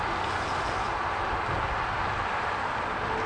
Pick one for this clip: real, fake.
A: real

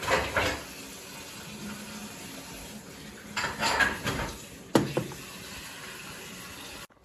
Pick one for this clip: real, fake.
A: real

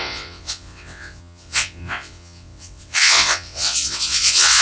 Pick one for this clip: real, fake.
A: fake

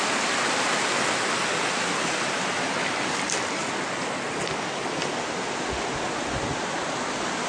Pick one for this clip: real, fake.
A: real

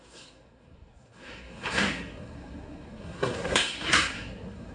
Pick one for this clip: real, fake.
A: fake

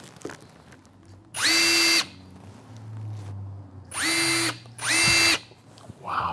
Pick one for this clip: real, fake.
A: real